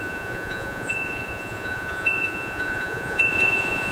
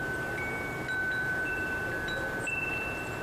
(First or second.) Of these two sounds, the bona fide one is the second